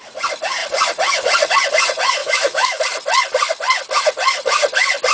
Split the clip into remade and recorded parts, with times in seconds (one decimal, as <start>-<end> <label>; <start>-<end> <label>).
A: 0.0-2.2 recorded; 2.2-2.8 remade; 2.8-5.1 recorded